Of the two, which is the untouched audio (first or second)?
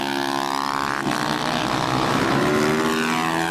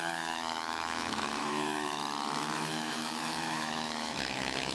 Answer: first